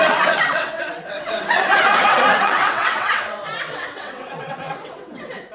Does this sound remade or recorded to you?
remade